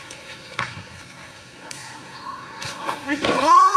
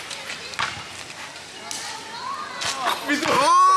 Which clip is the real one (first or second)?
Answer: second